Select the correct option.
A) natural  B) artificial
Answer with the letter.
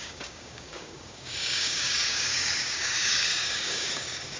B